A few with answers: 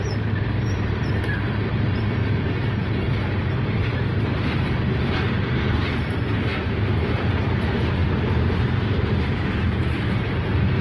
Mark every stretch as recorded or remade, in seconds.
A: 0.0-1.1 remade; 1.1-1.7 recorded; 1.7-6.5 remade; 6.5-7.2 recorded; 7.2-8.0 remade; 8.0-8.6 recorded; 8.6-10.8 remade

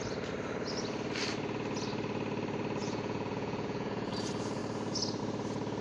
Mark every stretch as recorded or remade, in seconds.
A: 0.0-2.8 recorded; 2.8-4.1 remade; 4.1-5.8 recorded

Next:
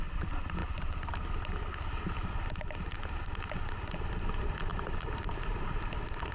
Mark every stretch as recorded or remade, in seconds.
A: 0.0-4.7 recorded; 4.7-5.5 remade; 5.5-6.3 recorded